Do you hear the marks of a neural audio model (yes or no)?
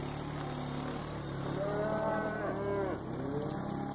no